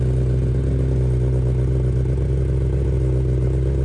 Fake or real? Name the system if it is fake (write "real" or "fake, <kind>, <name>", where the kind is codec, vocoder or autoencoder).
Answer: real